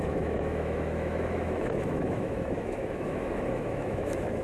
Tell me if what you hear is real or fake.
fake